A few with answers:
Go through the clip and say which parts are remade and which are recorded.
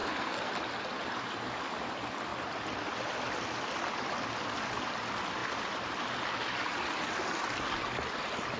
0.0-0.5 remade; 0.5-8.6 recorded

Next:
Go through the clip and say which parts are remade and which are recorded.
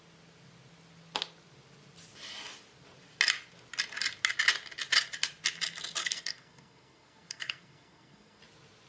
0.0-6.0 recorded; 6.0-8.4 remade; 8.4-8.9 recorded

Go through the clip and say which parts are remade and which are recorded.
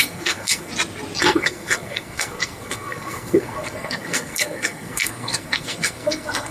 0.0-0.7 remade; 0.7-1.2 recorded; 1.2-6.5 remade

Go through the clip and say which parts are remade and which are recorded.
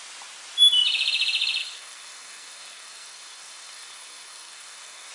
0.0-1.6 recorded; 1.6-5.1 remade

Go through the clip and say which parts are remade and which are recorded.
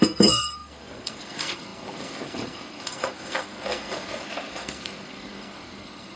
0.0-6.2 remade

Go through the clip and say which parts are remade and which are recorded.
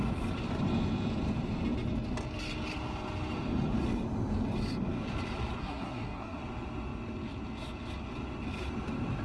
0.0-5.6 recorded; 5.6-6.4 remade; 6.4-9.2 recorded